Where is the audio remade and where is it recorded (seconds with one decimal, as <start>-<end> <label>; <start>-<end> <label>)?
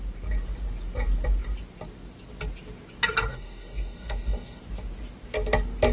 0.0-3.3 recorded; 3.3-4.6 remade; 4.6-5.9 recorded